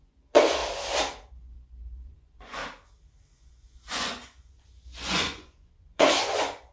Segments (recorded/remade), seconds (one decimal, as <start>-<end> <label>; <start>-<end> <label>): 0.0-0.6 remade; 0.6-1.3 recorded; 1.3-2.6 remade; 2.6-3.3 recorded; 3.3-6.7 remade